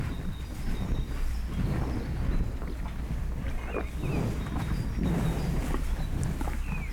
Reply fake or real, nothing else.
real